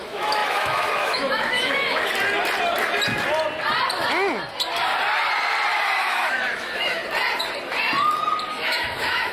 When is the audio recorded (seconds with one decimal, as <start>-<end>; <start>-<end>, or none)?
2.1-6.0; 7.0-8.5